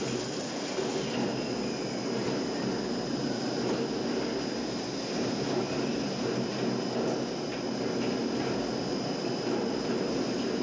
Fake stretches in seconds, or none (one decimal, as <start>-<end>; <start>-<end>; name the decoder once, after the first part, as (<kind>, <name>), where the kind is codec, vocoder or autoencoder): none